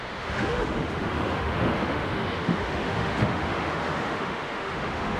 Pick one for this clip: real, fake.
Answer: fake